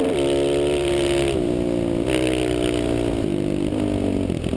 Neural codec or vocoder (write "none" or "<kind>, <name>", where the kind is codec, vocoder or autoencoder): none